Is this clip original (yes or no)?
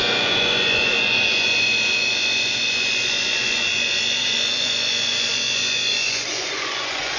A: no